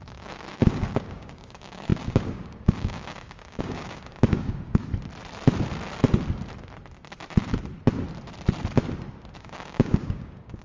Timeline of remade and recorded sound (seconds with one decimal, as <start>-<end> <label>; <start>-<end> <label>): 0.0-4.9 remade; 4.9-9.4 recorded; 9.4-10.6 remade